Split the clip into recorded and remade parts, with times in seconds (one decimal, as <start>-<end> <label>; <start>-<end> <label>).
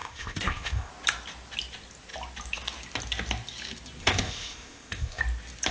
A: 0.0-0.9 remade; 0.9-4.0 recorded; 4.0-5.2 remade; 5.2-5.7 recorded